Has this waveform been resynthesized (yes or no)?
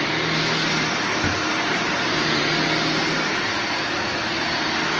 no